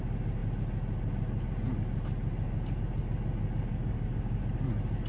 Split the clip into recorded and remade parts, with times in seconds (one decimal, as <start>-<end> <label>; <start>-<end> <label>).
0.0-3.7 recorded; 3.7-4.4 remade; 4.4-5.1 recorded